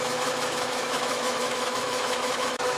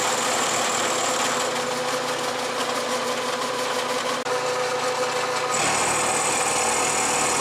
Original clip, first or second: second